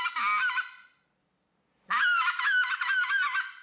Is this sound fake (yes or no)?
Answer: no